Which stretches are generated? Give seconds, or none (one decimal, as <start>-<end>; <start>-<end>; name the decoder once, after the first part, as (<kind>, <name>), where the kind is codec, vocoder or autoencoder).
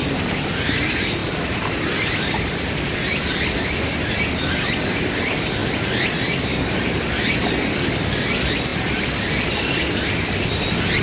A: 1.2-3.1 (vocoder, BigVGAN v2); 5.6-7.0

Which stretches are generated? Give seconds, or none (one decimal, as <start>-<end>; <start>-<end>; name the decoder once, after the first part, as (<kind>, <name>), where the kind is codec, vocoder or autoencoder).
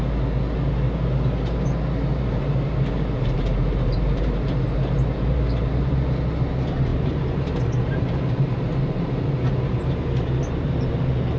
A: 2.1-6.1 (vocoder, BigVGAN v2); 6.9-11.4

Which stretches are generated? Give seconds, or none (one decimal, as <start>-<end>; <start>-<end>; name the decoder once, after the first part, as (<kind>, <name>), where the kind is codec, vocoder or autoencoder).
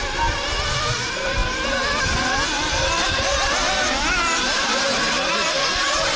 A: 0.0-1.4 (vocoder, BigVGAN v2); 2.7-6.2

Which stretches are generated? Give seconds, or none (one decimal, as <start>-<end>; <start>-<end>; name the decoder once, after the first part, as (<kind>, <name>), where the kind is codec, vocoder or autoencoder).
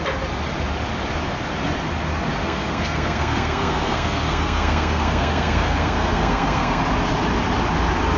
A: 2.4-6.8 (codec, SNAC)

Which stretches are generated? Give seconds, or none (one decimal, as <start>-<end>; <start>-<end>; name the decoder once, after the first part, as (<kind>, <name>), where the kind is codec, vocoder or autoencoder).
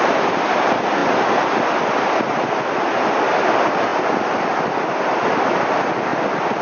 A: 3.9-4.7 (vocoder, BigVGAN v2)